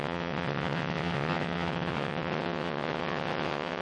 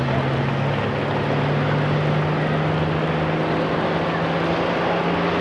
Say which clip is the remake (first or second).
first